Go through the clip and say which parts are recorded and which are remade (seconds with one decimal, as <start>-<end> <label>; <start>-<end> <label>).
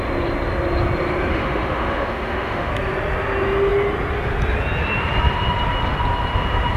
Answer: 0.0-1.3 recorded; 1.3-2.7 remade; 2.7-6.8 recorded